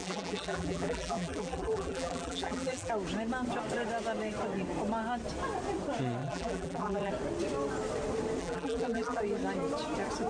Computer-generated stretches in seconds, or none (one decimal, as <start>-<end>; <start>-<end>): 0.0-2.9; 6.2-7.1; 8.4-9.2